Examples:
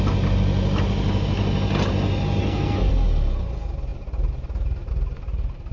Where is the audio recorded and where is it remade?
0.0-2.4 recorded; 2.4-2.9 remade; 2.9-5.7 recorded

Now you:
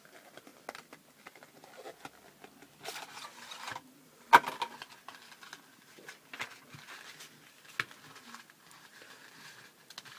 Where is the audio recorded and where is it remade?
0.0-10.2 recorded

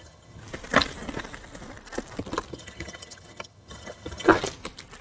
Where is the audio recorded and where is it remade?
0.0-0.4 remade; 0.4-2.5 recorded; 2.5-4.3 remade; 4.3-5.0 recorded

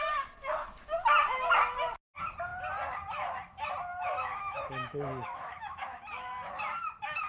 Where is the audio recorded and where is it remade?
0.0-3.9 recorded; 3.9-6.0 remade; 6.0-7.3 recorded

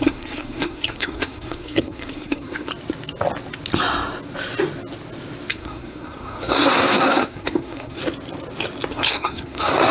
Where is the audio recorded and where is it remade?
0.0-2.7 remade; 2.7-5.5 recorded; 5.5-8.0 remade; 8.0-8.9 recorded; 8.9-9.9 remade

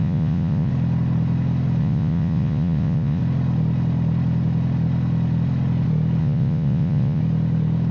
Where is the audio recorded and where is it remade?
0.0-0.7 remade; 0.7-1.8 recorded; 1.8-3.2 remade; 3.2-6.2 recorded; 6.2-7.2 remade; 7.2-7.9 recorded

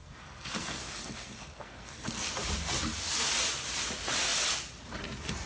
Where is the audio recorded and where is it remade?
0.0-2.3 remade; 2.3-5.5 recorded